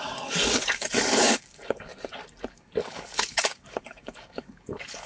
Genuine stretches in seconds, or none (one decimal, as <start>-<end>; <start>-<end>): 1.9-2.5